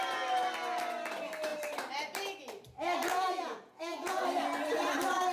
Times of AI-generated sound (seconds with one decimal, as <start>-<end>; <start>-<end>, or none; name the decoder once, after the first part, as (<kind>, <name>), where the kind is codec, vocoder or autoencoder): 3.1-4.2 (vocoder, Vocos)